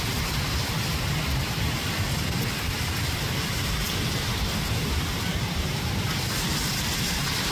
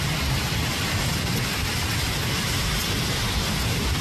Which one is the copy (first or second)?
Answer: first